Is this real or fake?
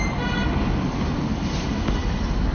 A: real